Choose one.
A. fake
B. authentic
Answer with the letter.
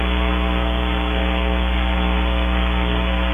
A